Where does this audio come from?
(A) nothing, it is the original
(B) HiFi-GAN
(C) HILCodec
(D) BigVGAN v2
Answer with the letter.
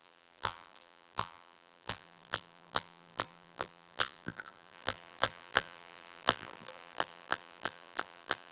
D